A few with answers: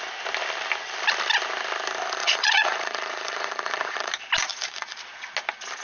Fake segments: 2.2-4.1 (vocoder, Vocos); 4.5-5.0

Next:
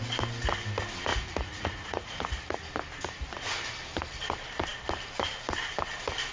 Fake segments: 1.1-2.6 (vocoder, Vocos)

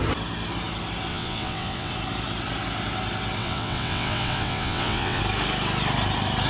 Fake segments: 1.1-1.9 (vocoder, WaveNeXt); 3.4-5.2

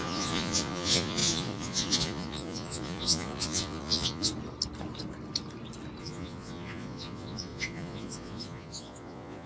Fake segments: 0.0-4.3 (vocoder, Vocos); 6.0-9.5

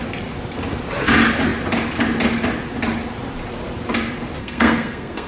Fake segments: 4.4-5.3 (codec, SNAC)

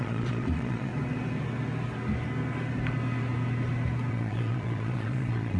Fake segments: 0.0-0.9 (vocoder, Vocos); 4.1-5.6

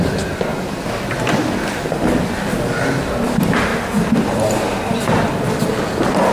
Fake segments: none

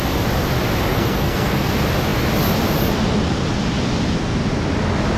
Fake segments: 0.9-1.7 (codec, SNAC)